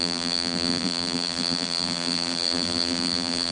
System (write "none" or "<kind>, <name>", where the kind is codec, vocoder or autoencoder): vocoder, BigVGAN v2